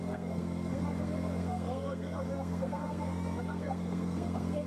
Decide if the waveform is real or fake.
fake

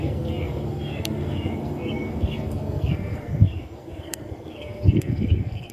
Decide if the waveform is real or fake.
fake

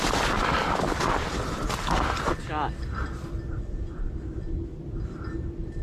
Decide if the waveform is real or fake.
real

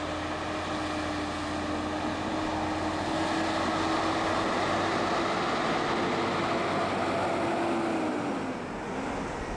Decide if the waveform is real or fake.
real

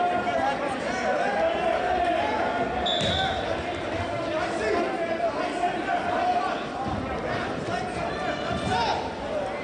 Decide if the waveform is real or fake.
real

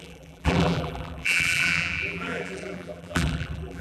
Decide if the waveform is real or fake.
fake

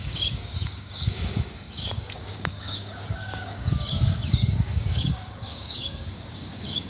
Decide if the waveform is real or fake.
fake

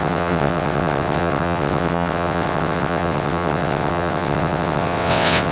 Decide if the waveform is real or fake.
fake